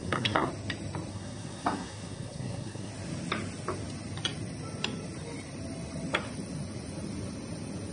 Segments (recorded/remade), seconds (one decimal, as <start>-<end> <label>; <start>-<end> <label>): 0.0-0.5 remade; 0.5-1.1 recorded; 1.1-2.9 remade; 2.9-7.9 recorded